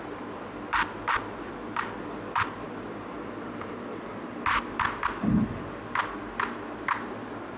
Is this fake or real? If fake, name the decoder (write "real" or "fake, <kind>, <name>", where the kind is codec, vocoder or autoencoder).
real